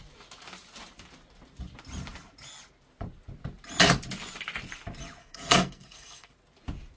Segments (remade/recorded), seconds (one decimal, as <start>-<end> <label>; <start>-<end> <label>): 0.0-5.2 recorded; 5.2-6.3 remade; 6.3-7.0 recorded